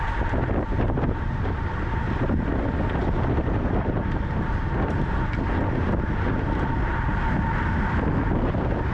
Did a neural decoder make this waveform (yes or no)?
no